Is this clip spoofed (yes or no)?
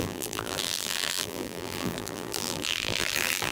yes